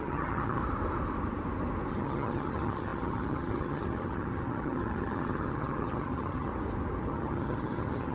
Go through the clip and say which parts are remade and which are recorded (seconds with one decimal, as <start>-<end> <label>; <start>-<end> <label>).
0.0-0.6 remade; 0.6-1.9 recorded; 1.9-6.5 remade; 6.5-7.0 recorded; 7.0-8.1 remade